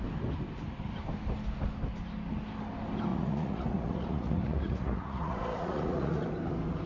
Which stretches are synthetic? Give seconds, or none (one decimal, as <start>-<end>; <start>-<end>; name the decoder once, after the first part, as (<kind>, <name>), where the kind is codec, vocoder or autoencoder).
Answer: 3.1-6.2 (vocoder, Vocos)